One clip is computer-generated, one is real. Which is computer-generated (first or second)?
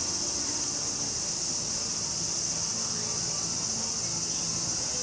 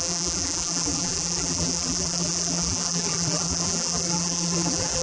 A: second